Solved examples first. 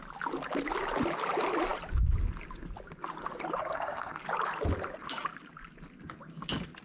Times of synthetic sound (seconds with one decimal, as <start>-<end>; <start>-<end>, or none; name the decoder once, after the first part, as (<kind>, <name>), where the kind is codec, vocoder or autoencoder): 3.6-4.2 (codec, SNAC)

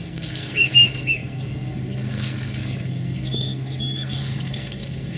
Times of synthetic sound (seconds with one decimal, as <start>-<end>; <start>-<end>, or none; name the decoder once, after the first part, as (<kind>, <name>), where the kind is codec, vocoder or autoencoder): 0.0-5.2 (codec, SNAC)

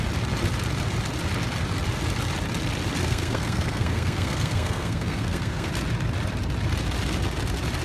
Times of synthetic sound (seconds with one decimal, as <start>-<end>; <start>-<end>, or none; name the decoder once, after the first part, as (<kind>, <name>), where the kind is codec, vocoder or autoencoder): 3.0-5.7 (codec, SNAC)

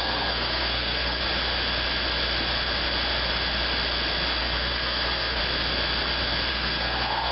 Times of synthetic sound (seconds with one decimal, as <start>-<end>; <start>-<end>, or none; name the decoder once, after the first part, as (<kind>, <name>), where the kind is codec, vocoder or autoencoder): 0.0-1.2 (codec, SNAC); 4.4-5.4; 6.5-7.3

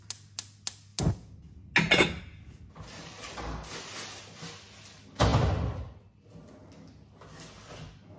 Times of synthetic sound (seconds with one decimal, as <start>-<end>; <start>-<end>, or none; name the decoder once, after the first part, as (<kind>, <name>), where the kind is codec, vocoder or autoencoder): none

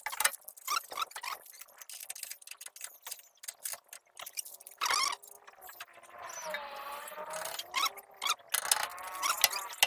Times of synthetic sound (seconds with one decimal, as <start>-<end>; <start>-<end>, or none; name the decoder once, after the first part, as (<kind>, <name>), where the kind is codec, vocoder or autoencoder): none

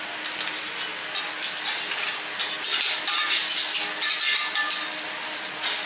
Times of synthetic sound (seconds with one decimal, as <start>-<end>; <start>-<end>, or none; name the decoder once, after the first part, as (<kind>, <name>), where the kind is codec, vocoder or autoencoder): none